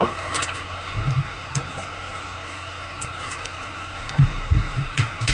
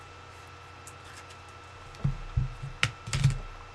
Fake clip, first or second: first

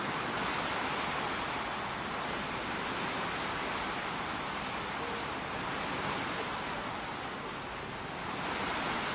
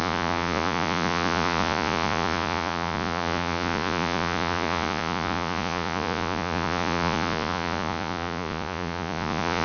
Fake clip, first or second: second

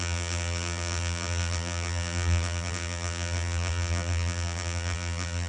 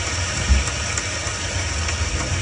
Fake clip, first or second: first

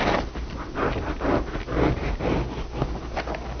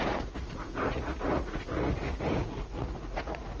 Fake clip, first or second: second